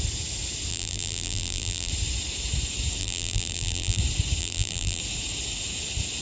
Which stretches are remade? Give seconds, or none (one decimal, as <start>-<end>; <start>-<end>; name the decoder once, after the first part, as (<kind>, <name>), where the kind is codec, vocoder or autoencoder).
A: 0.7-1.9 (vocoder, BigVGAN v2); 3.0-4.0; 4.4-5.0